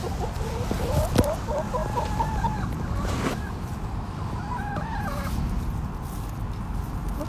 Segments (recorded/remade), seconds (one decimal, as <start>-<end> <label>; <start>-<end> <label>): 0.0-7.3 recorded